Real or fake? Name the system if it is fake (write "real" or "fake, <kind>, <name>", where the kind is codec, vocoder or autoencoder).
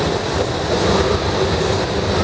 real